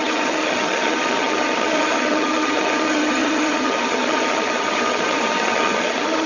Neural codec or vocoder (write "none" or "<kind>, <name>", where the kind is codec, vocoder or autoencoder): vocoder, HiFi-GAN